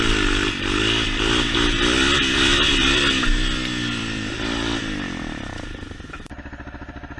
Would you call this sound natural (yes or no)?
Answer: no